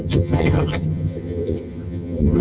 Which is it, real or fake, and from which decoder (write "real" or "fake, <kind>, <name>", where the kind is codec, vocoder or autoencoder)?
fake, vocoder, HiFi-GAN